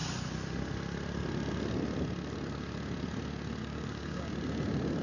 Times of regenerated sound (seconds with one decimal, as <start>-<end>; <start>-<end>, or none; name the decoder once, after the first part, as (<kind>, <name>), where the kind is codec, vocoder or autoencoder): 3.6-4.3 (codec, DAC)